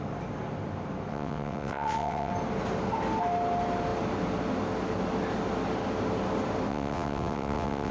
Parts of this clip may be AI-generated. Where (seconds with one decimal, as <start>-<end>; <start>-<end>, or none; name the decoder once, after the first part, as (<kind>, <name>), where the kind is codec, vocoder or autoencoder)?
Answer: 1.1-2.3 (vocoder, WaveNeXt); 6.7-7.9